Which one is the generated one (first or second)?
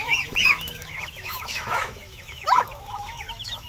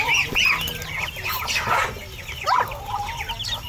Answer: first